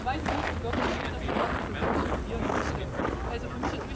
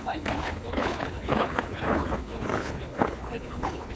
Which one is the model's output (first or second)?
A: second